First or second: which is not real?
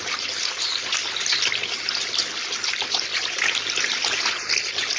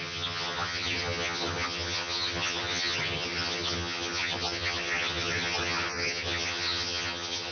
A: second